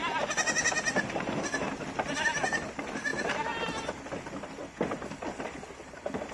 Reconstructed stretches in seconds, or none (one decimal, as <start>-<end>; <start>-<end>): none